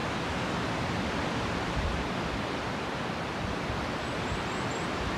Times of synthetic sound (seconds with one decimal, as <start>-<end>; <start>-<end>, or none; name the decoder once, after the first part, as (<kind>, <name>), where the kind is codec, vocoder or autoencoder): none